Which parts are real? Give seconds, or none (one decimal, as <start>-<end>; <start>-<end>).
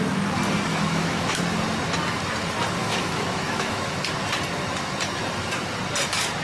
0.0-0.7; 1.4-2.8; 4.0-6.4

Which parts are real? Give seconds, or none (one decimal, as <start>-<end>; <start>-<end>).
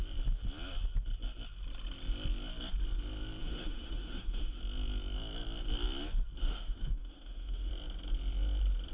0.0-3.4; 4.6-6.4; 7.7-8.9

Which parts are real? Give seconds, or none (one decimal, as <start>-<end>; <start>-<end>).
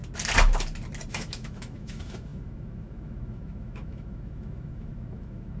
0.0-1.1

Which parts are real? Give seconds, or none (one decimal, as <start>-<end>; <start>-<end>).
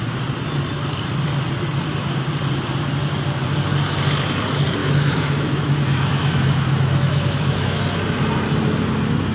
0.0-4.8; 7.8-9.3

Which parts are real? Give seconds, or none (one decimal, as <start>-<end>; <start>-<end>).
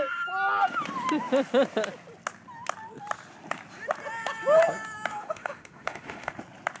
0.0-5.1; 6.3-6.8